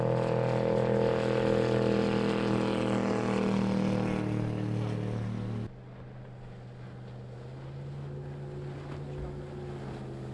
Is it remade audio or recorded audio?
recorded